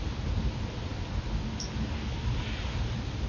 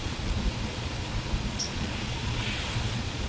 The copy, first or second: second